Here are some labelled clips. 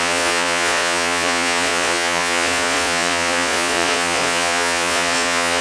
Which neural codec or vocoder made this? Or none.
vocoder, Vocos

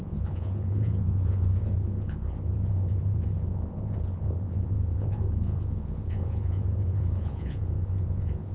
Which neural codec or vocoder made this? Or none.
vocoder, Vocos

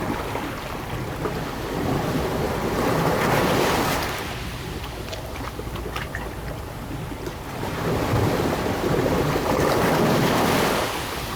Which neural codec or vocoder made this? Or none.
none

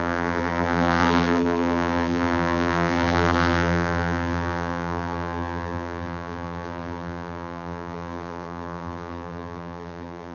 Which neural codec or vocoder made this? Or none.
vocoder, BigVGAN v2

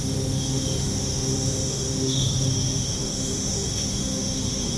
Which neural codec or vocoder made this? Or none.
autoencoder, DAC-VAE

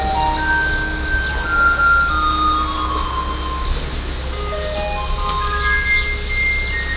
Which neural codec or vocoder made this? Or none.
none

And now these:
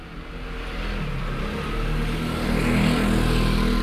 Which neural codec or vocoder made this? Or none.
none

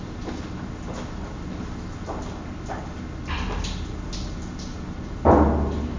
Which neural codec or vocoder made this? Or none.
none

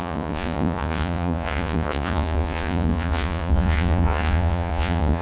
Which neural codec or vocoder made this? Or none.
vocoder, Vocos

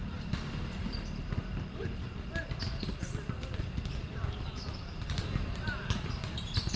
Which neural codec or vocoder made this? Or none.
none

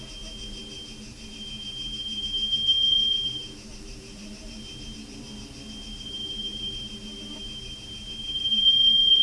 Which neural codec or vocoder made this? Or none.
vocoder, BigVGAN v2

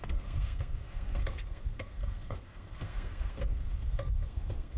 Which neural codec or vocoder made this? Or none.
codec, SNAC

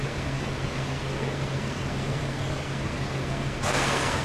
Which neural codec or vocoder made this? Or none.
codec, SNAC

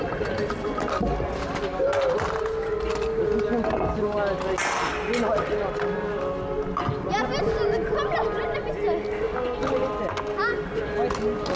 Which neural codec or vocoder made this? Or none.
none